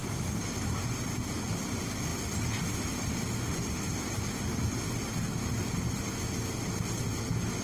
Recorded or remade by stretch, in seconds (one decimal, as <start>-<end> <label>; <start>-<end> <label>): 0.0-7.6 recorded